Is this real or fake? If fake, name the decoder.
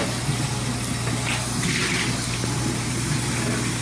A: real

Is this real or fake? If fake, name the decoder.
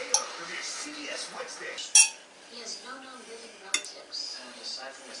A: real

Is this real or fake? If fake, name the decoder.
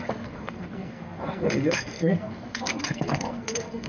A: fake, codec, SNAC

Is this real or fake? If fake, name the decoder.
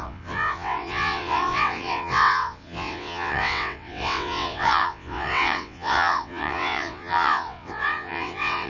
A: fake, vocoder, WaveNeXt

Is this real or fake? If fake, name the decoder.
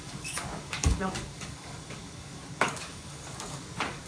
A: fake, codec, DAC